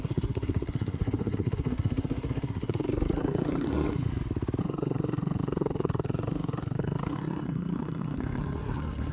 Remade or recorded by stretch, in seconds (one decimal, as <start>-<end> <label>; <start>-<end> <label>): 0.0-4.1 remade; 4.1-4.6 recorded; 4.6-9.1 remade